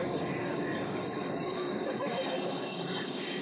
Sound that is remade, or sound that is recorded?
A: remade